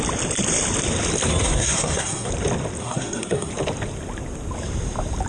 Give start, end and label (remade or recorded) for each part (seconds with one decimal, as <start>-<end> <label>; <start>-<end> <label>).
0.0-1.3 recorded; 1.3-2.3 remade; 2.3-2.8 recorded; 2.8-3.5 remade; 3.5-5.3 recorded

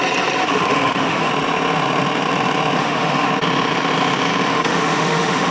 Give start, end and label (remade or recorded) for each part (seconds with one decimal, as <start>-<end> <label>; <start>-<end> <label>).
0.0-0.4 recorded; 0.4-1.3 remade; 1.3-2.8 recorded; 2.8-3.3 remade; 3.3-4.5 recorded; 4.5-5.5 remade

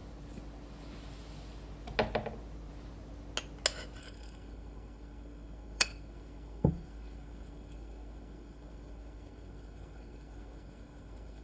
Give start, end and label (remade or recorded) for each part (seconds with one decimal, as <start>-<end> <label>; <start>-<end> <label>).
0.0-4.0 recorded; 4.0-11.4 remade

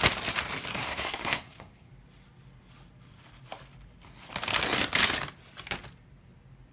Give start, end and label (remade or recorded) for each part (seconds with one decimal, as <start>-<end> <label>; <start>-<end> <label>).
0.0-0.7 recorded; 0.7-1.9 remade; 1.9-6.7 recorded

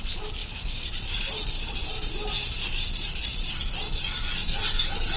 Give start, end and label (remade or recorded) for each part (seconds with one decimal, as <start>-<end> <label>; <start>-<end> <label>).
0.0-0.4 recorded; 0.4-3.5 remade; 3.5-5.2 recorded

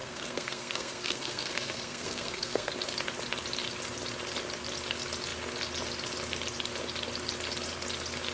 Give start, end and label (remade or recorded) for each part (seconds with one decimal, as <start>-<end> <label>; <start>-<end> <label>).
0.0-2.7 remade; 2.7-8.3 recorded

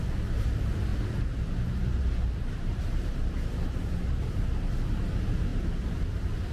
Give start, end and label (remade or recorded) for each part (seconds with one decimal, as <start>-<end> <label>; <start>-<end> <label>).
0.0-0.9 recorded; 0.9-4.8 remade; 4.8-6.5 recorded

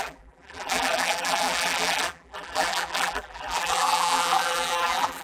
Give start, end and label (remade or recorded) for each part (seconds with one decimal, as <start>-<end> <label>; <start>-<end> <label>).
0.0-5.2 remade